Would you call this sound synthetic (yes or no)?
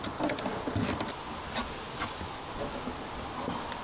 no